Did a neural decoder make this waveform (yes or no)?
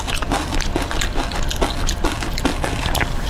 no